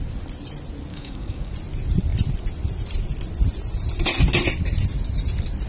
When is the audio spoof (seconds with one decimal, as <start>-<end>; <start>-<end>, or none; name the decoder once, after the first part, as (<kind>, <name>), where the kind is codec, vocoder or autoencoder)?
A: 0.9-1.5 (codec, DAC)